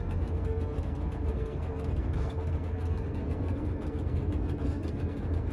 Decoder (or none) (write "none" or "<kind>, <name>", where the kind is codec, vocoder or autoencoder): codec, SNAC